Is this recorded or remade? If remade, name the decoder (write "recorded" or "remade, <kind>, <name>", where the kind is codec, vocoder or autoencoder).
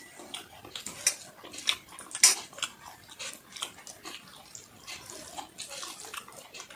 recorded